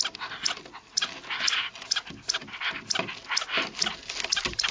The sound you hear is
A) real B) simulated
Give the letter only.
A